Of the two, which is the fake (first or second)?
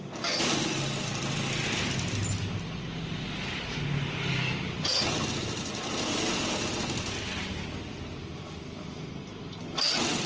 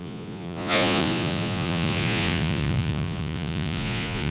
second